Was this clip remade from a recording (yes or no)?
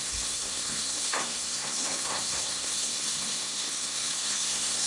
yes